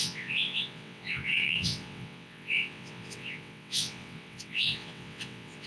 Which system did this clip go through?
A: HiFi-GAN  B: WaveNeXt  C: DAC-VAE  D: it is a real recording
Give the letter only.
B